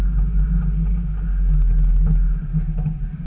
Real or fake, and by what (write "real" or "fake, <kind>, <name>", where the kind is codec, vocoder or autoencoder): real